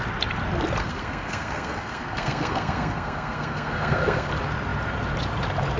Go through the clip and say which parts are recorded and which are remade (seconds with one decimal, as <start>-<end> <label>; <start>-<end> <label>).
0.0-0.8 recorded; 0.8-4.3 remade; 4.3-5.8 recorded